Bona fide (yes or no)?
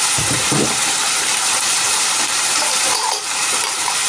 no